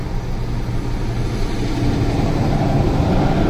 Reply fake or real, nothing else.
real